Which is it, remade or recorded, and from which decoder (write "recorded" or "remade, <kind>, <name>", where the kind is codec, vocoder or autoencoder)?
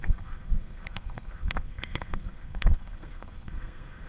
remade, codec, SNAC